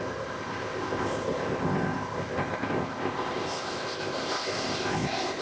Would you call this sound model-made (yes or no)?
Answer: yes